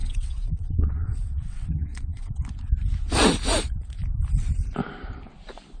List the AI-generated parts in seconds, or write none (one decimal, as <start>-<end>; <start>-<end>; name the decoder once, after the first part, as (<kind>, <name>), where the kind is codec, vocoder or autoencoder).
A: 0.0-2.4 (vocoder, WaveNeXt)